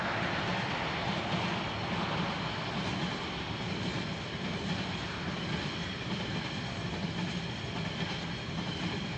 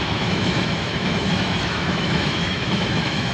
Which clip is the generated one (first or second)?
second